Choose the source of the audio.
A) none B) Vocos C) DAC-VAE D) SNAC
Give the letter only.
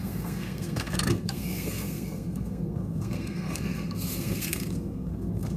D